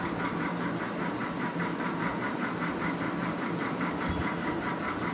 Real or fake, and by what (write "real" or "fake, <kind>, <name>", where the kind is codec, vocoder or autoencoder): real